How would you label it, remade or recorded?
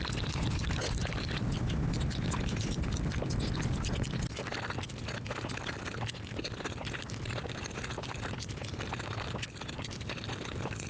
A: recorded